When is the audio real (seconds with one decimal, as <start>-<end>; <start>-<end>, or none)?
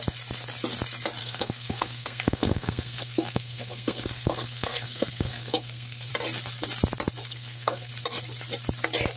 0.0-1.2; 6.1-7.2; 7.9-9.2